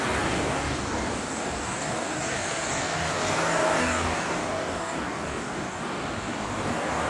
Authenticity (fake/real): fake